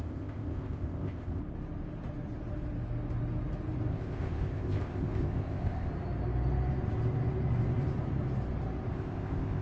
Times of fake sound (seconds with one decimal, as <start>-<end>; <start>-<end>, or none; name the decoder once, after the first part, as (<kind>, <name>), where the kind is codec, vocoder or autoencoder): 0.0-1.4 (codec, ZipCodec); 3.9-5.9; 8.9-9.6